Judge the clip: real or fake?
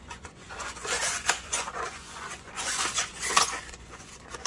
fake